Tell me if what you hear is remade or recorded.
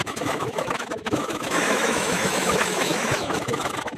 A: remade